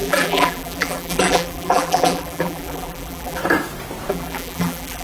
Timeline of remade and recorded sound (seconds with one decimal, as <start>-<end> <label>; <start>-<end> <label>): 0.0-3.4 remade; 3.4-4.1 recorded; 4.1-5.0 remade